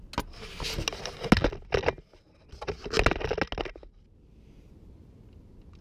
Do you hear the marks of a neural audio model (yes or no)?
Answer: no